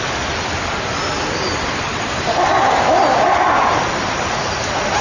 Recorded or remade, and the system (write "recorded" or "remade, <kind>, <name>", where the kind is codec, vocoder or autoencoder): recorded